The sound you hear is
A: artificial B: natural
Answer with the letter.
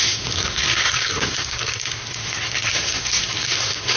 A